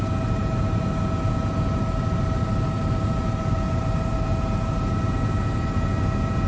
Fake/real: real